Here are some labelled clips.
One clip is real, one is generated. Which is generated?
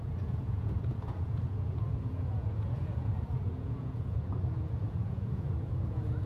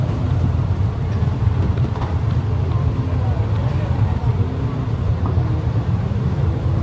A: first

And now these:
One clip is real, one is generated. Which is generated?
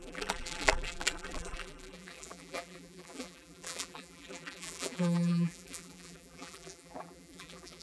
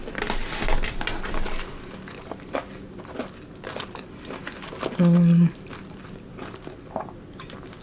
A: first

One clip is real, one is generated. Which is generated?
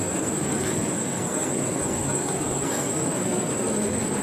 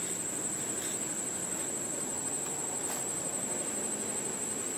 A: first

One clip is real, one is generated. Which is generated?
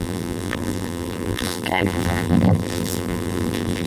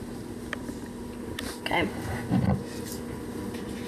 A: first